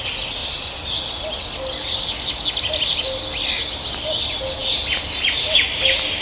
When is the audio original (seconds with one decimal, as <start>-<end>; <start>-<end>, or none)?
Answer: 0.0-4.6; 5.3-6.2